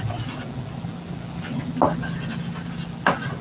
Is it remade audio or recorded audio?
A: recorded